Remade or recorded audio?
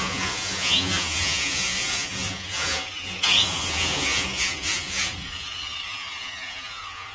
remade